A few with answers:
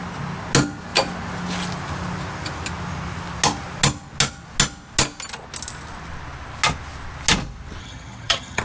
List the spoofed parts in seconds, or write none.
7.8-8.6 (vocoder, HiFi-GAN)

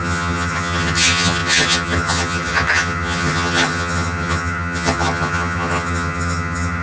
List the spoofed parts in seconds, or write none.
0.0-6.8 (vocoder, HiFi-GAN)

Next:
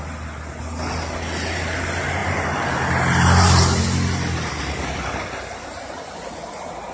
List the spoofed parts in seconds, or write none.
none

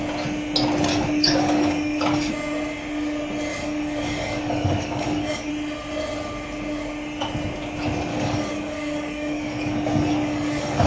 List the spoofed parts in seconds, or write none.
0.9-2.3 (codec, DAC); 3.5-5.5; 8.1-10.9

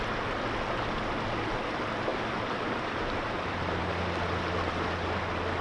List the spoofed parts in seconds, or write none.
2.1-3.6 (vocoder, BigVGAN v2)